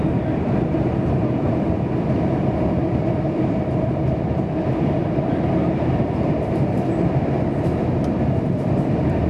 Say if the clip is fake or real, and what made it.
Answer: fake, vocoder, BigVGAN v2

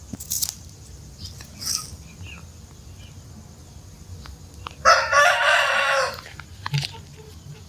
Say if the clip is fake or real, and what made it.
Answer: real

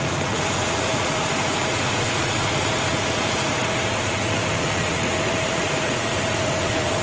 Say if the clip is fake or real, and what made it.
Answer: fake, vocoder, Vocos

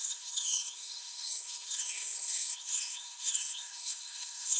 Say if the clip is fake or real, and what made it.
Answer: fake, codec, SNAC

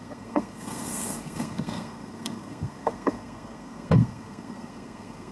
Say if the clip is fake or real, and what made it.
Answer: fake, codec, SNAC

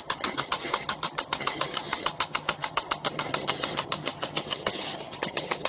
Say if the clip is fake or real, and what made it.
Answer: fake, vocoder, HiFi-GAN